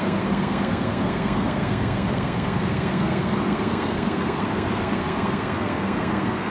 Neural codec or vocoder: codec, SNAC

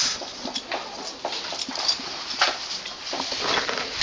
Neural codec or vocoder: none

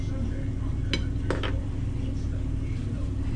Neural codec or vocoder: none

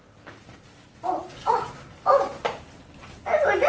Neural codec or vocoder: none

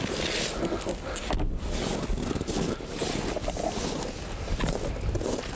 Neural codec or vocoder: none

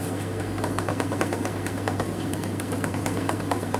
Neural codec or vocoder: codec, SNAC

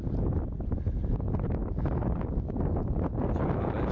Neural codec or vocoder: none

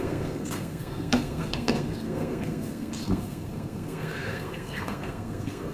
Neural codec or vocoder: codec, SNAC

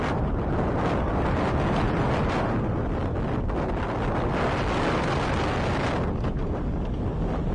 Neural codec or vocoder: none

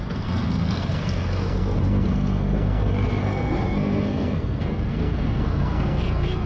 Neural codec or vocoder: codec, SNAC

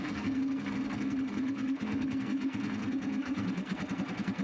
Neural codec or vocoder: codec, SNAC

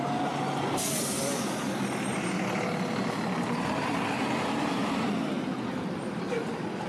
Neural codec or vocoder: none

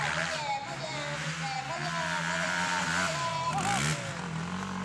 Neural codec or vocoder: none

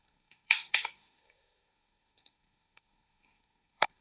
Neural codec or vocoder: codec, SNAC